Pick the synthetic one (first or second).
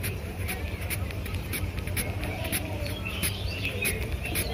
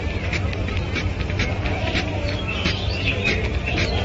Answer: first